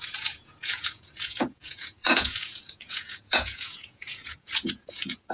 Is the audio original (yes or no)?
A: no